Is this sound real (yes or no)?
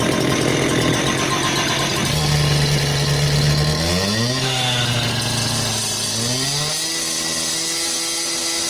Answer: yes